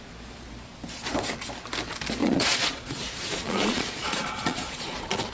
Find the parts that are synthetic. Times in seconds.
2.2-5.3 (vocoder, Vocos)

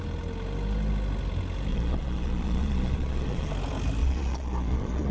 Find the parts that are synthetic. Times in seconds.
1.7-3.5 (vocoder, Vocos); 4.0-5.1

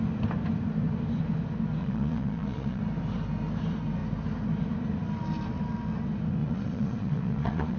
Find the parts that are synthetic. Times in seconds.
1.8-2.8 (vocoder, Vocos); 6.4-7.8